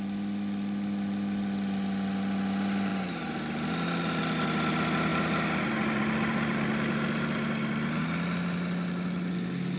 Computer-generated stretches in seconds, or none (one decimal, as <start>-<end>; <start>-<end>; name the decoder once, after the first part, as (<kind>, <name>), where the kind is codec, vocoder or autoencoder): none